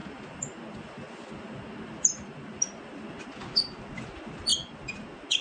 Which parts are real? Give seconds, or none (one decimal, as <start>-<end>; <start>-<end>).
0.0-5.4